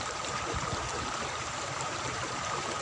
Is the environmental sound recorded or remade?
remade